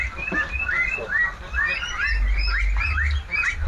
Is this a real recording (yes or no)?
yes